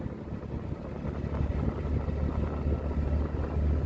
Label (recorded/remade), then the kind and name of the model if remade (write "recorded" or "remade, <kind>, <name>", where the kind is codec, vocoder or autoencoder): recorded